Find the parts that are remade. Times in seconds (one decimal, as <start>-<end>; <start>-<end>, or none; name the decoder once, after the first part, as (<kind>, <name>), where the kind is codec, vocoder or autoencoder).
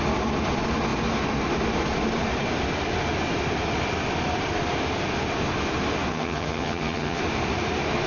6.1-7.2 (vocoder, HiFi-GAN)